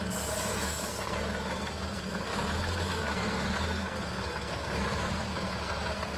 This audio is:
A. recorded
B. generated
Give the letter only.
B